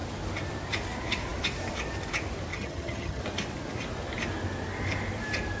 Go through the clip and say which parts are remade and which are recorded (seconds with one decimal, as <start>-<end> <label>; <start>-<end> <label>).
0.0-2.5 recorded; 2.5-3.2 remade; 3.2-5.6 recorded